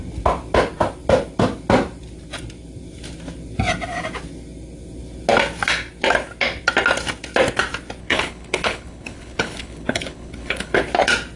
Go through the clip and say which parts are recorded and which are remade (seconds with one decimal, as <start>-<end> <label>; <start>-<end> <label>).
0.0-8.0 recorded; 8.0-10.8 remade; 10.8-11.4 recorded